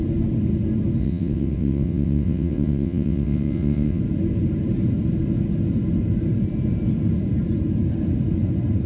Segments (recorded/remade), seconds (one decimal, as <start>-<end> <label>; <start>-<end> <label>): 0.0-1.0 recorded; 1.0-4.0 remade; 4.0-8.9 recorded